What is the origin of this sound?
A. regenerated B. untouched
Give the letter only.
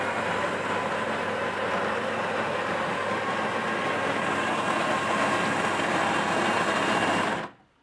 B